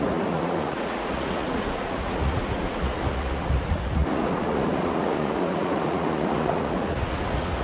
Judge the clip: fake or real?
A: fake